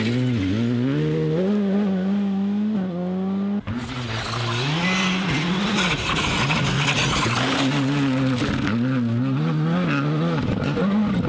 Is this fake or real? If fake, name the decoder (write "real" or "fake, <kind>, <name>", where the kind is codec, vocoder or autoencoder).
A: real